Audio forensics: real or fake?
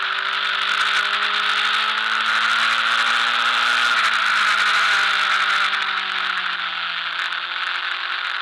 real